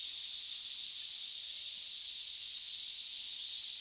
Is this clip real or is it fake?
real